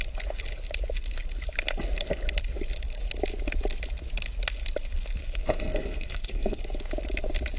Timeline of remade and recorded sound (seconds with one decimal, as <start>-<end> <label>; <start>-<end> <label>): 0.0-5.2 recorded; 5.2-6.6 remade; 6.6-7.6 recorded